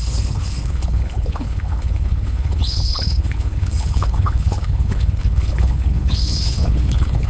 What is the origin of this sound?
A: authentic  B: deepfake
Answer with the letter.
B